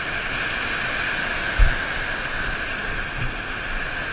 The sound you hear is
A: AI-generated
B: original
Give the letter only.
B